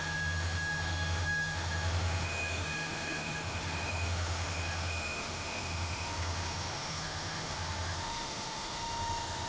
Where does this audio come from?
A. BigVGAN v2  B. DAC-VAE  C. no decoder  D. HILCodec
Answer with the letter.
B